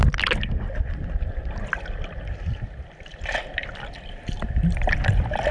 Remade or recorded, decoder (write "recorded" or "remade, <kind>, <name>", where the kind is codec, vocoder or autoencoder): recorded